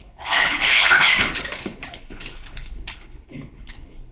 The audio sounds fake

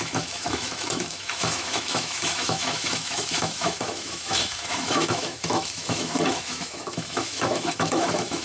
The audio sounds fake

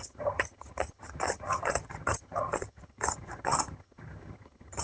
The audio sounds fake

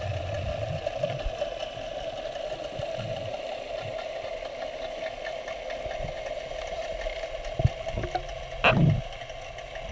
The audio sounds real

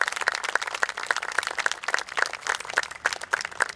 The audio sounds real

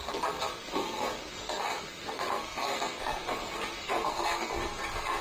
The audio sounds fake